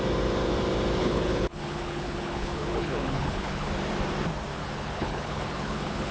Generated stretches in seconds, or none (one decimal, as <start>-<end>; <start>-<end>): 1.0-3.7; 4.5-6.1

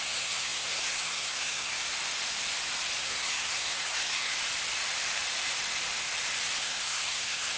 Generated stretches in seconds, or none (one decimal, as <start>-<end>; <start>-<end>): 0.0-1.8; 3.0-4.3; 6.6-7.6

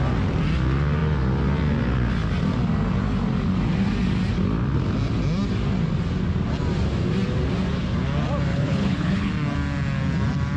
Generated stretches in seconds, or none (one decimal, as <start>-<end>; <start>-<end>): 8.5-9.3

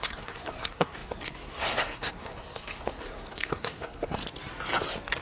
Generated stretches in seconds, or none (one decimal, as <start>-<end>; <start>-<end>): 0.0-4.2